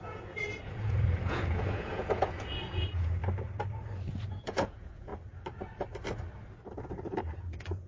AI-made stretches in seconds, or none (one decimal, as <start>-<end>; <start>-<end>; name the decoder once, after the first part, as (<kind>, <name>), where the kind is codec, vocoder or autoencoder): 0.0-3.2 (vocoder, Vocos); 4.3-5.1; 7.2-7.9